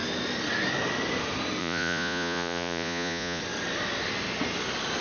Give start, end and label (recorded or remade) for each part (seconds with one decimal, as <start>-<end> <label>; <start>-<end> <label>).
0.0-1.6 recorded; 1.6-3.4 remade; 3.4-5.0 recorded